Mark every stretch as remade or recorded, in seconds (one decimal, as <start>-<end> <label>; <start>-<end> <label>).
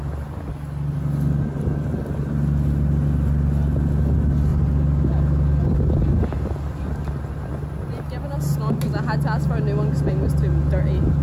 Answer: 0.0-11.2 recorded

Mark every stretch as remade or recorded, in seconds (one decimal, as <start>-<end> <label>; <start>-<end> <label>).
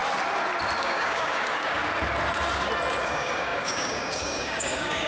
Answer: 0.0-0.8 recorded; 0.8-1.8 remade; 1.8-3.0 recorded; 3.0-5.1 remade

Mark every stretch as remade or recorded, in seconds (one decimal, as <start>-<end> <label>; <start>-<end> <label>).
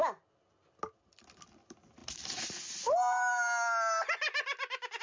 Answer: 0.0-5.0 recorded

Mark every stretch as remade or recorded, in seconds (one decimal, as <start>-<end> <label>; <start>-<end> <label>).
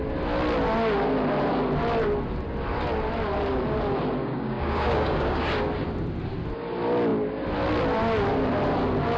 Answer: 0.0-4.2 recorded; 4.2-5.5 remade; 5.5-9.2 recorded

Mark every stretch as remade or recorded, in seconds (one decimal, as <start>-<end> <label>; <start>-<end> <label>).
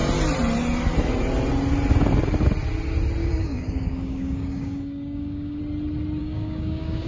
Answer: 0.0-3.2 recorded; 3.2-5.6 remade; 5.6-6.2 recorded; 6.2-7.1 remade